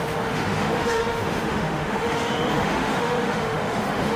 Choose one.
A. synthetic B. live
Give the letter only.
A